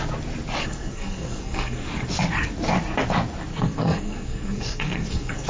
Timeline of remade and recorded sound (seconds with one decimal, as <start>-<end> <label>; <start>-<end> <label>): 0.0-0.6 recorded; 0.6-1.9 remade; 1.9-3.5 recorded; 3.5-5.5 remade